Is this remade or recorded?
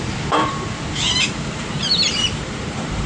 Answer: remade